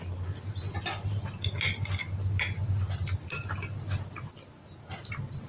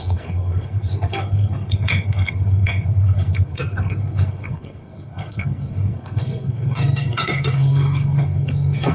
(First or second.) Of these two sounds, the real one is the first